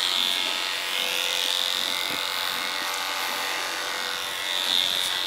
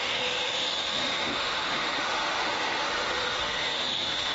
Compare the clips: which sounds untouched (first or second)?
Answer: first